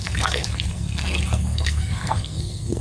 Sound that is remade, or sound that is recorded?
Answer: remade